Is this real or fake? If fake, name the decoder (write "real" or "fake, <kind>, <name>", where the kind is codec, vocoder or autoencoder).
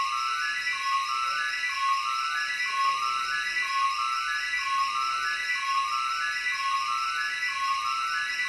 real